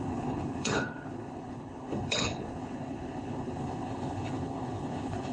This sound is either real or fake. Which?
fake